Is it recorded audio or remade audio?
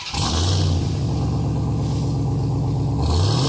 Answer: recorded